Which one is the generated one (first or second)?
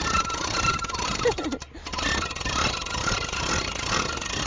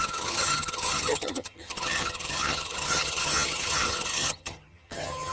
second